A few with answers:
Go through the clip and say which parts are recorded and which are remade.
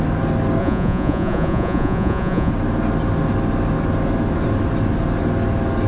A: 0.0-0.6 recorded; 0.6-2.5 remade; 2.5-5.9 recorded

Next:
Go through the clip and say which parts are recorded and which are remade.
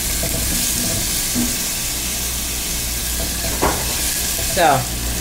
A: 0.0-5.2 recorded